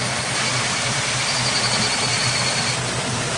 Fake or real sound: real